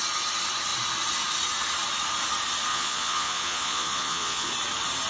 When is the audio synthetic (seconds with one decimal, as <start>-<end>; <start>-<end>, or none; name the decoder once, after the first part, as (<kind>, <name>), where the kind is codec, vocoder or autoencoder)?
2.7-4.5 (vocoder, Vocos)